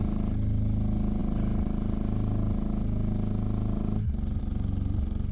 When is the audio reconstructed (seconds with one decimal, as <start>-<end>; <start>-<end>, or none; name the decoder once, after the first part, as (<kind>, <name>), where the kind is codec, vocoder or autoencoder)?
none